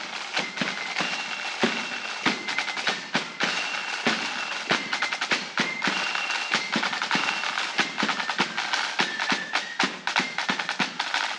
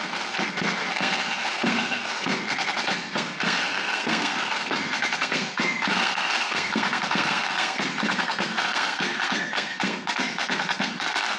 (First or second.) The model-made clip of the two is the second